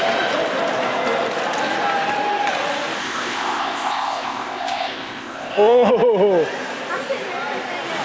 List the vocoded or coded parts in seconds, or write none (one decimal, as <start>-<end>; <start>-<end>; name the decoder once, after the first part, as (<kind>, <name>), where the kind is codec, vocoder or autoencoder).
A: 3.0-5.9 (codec, ZipCodec)